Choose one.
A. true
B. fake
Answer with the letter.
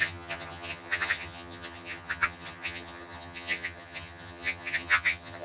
B